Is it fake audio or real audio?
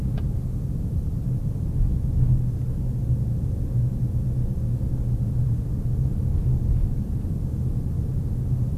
real